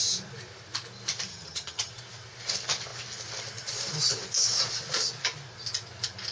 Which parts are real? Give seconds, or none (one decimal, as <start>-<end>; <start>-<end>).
0.0-1.3; 1.9-6.3